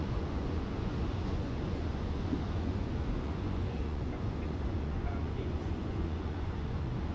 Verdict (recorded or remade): remade